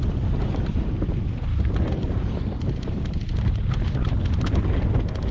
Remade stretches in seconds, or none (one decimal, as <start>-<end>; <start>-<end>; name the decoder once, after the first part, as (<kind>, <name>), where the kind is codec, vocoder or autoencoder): none